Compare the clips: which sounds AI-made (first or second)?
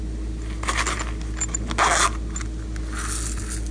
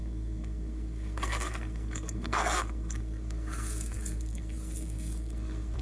second